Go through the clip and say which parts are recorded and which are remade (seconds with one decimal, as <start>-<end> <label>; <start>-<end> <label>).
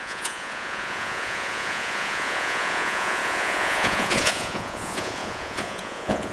0.0-6.3 remade